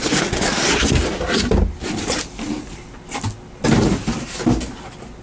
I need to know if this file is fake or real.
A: real